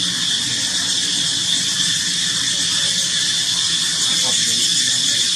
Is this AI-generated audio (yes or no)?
yes